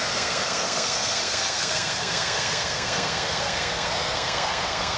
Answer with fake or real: fake